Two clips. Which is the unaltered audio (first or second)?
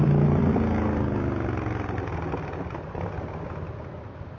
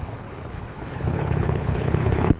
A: first